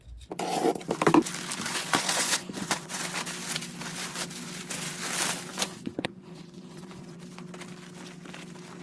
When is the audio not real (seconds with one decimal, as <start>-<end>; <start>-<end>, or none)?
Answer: 1.7-3.0; 5.5-7.2